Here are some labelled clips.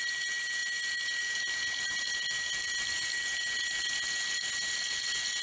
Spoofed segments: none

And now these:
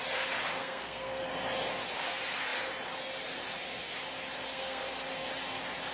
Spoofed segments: 0.6-1.3 (codec, SNAC); 4.5-5.0

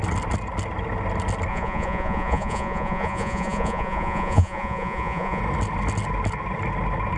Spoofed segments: 1.5-5.4 (vocoder, Vocos)

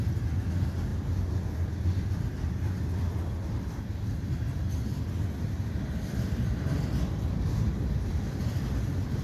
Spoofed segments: none

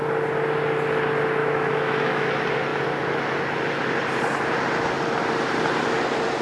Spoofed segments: 1.4-2.3 (autoencoder, DAC-VAE)

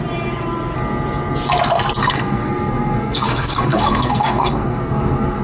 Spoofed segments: 2.0-5.4 (codec, SNAC)